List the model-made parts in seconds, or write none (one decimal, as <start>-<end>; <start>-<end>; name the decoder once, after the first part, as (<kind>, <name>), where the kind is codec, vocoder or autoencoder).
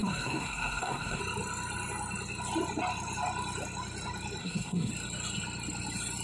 0.0-1.2 (codec, SNAC); 4.4-4.9